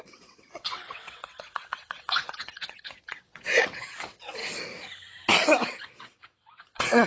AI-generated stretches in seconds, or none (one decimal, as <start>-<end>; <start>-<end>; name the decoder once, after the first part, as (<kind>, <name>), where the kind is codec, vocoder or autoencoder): 0.0-4.4 (vocoder, WaveNeXt); 5.7-7.1